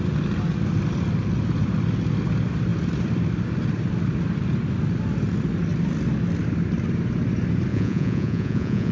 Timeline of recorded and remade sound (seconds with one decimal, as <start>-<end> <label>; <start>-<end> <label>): 0.0-7.7 recorded; 7.7-8.9 remade

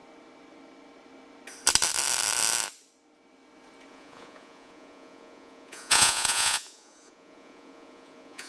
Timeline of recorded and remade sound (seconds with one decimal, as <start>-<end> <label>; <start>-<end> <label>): 0.0-3.9 recorded; 3.9-8.5 remade